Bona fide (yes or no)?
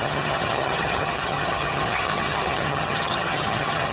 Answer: no